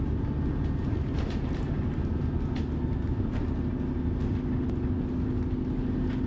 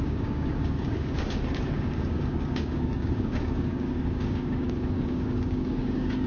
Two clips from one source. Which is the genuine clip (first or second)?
first